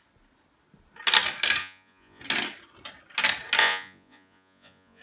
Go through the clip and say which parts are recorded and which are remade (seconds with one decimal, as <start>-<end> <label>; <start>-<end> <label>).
0.0-1.6 recorded; 1.6-2.2 remade; 2.2-3.6 recorded; 3.6-5.0 remade